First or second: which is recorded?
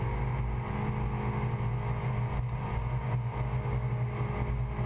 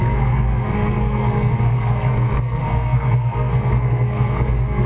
first